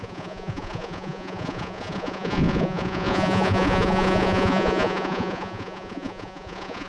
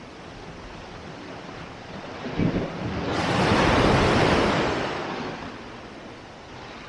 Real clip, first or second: second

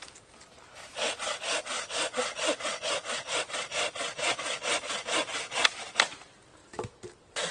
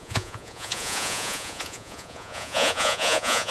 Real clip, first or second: first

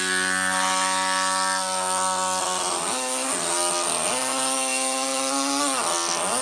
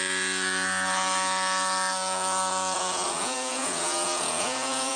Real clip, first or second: first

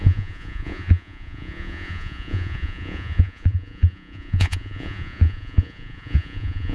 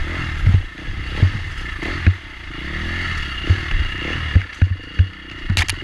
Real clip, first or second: second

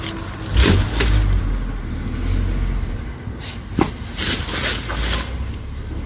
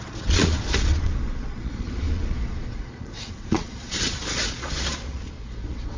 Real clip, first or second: first